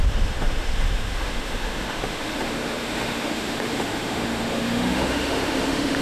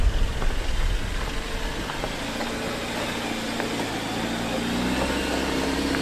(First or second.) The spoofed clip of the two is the first